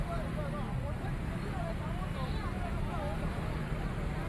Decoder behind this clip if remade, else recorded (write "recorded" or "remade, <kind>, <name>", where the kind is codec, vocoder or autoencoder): recorded